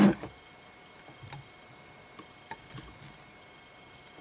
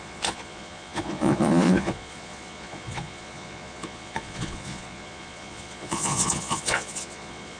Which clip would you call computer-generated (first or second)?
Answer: second